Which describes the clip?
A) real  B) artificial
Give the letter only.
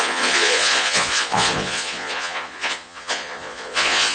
B